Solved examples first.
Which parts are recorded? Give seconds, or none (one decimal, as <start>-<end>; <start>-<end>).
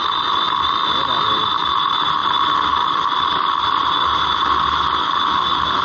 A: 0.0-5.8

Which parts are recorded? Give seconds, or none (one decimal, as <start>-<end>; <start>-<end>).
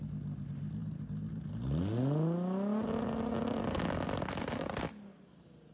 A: 0.0-5.7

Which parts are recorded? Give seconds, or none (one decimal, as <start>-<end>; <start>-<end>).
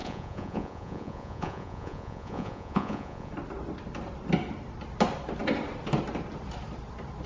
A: 3.3-7.3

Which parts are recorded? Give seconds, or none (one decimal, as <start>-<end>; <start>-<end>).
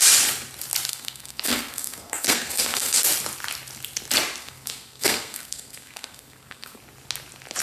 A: 0.0-0.9; 3.0-4.4; 6.8-7.6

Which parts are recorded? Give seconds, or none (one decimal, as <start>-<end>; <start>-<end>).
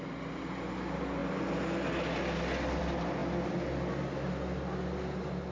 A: 0.0-5.5